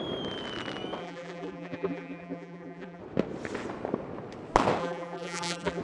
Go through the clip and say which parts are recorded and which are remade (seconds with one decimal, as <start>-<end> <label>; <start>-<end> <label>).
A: 0.0-1.0 recorded; 1.0-3.0 remade; 3.0-4.8 recorded; 4.8-5.8 remade